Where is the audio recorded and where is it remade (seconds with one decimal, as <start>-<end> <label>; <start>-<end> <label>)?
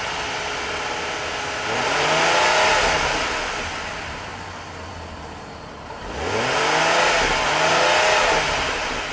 0.0-9.1 recorded